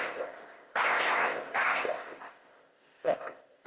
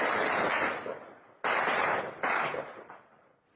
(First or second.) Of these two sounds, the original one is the second